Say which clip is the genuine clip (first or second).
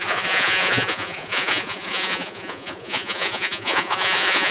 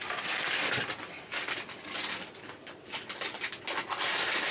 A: second